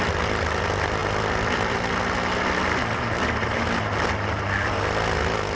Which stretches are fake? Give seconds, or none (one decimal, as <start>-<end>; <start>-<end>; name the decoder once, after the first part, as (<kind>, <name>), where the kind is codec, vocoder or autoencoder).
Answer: none